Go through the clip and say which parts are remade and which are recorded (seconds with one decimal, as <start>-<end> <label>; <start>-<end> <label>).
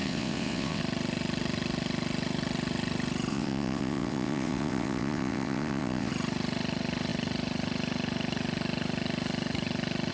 0.0-0.8 remade; 0.8-3.3 recorded; 3.3-6.1 remade; 6.1-10.1 recorded